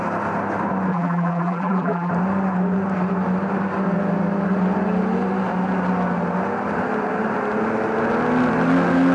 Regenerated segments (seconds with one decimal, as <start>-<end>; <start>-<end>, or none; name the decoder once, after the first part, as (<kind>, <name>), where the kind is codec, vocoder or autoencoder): 0.9-2.1 (vocoder, BigVGAN v2)